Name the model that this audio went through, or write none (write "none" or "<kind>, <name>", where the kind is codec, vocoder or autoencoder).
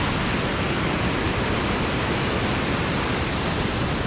none